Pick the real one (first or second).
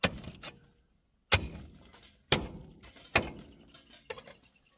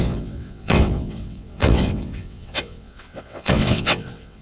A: first